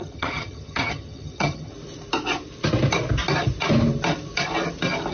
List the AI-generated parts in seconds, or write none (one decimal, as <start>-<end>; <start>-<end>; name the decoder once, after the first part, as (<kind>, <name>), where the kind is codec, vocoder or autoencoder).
0.0-1.7 (vocoder, HiFi-GAN)